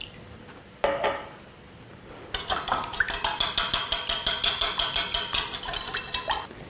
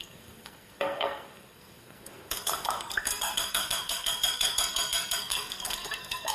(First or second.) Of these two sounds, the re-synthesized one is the second